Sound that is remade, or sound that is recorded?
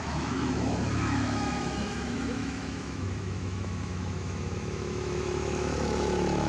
remade